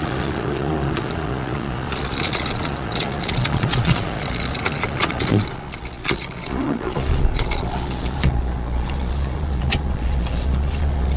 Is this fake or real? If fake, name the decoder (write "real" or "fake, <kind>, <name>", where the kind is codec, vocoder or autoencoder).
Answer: fake, vocoder, Vocos